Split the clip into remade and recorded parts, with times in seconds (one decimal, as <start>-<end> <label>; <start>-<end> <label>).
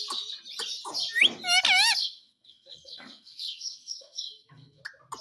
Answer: 0.0-2.0 recorded; 2.0-4.8 remade; 4.8-5.2 recorded